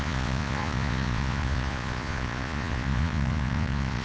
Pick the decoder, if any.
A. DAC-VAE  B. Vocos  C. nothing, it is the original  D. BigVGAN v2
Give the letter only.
B